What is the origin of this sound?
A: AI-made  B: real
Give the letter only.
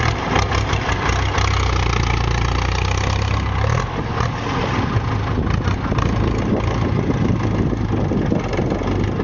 B